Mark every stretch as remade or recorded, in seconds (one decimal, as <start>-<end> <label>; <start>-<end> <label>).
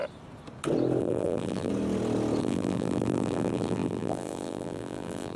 0.0-1.0 recorded; 1.0-1.7 remade; 1.7-2.4 recorded; 2.4-5.4 remade